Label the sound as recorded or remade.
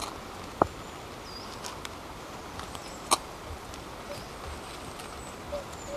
recorded